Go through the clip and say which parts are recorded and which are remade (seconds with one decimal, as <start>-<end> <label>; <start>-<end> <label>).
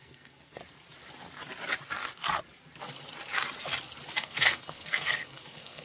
0.0-0.6 remade; 0.6-4.1 recorded; 4.1-5.8 remade